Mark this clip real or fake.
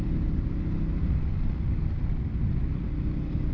real